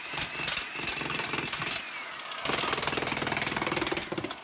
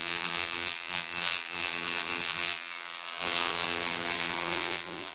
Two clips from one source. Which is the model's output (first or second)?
second